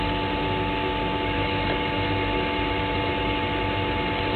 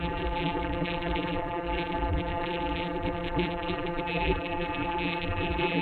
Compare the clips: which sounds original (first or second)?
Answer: first